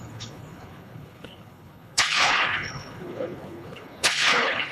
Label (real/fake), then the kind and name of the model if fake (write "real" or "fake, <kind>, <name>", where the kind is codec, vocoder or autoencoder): fake, codec, HILCodec